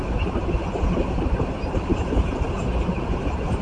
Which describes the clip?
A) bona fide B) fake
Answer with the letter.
B